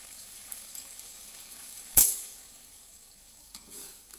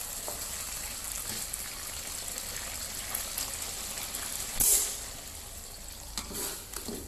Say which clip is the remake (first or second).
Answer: first